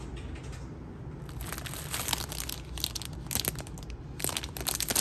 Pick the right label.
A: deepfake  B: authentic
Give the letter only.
B